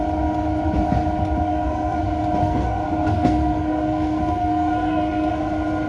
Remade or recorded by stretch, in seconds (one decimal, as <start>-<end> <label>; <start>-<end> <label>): 0.0-1.5 recorded; 1.5-2.0 remade; 2.0-2.4 recorded; 2.4-5.3 remade; 5.3-5.9 recorded

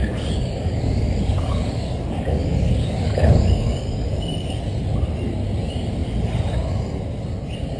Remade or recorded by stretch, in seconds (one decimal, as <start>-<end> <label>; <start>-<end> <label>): 0.0-4.6 remade; 4.6-7.8 recorded

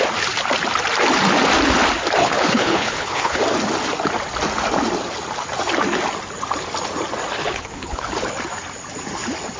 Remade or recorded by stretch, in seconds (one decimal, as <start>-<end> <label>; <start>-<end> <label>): 0.0-2.2 recorded; 2.2-3.4 remade; 3.4-7.4 recorded; 7.4-8.1 remade; 8.1-9.6 recorded

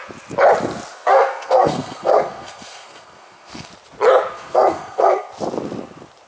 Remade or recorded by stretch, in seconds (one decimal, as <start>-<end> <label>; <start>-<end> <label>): 0.0-0.9 recorded; 0.9-3.7 remade; 3.7-4.3 recorded; 4.3-5.3 remade; 5.3-6.3 recorded

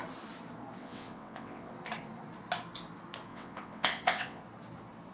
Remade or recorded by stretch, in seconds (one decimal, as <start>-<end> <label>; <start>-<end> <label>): 0.0-0.8 recorded; 0.8-1.7 remade; 1.7-3.3 recorded; 3.3-4.4 remade; 4.4-5.1 recorded

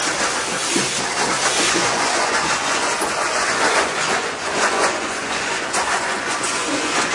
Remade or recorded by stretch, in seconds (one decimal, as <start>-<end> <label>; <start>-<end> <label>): 0.0-1.6 recorded; 1.6-7.1 remade

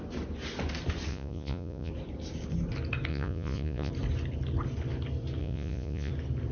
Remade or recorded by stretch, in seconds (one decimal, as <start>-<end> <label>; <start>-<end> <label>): 0.0-1.1 recorded; 1.1-1.9 remade; 1.9-3.1 recorded; 3.1-3.9 remade; 3.9-5.4 recorded; 5.4-6.1 remade; 6.1-6.5 recorded